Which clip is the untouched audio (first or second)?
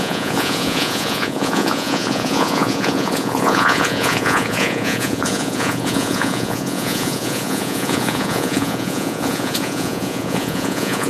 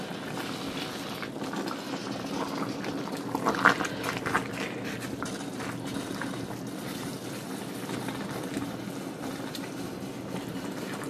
second